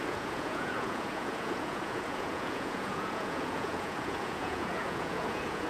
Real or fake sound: fake